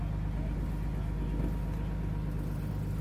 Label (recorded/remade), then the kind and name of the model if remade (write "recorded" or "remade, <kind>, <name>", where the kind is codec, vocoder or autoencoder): recorded